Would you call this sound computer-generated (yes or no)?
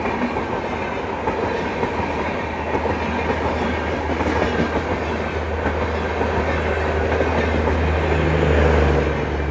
no